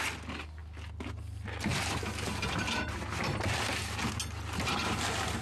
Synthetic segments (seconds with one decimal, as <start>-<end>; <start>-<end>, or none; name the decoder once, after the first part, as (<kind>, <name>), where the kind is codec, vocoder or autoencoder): none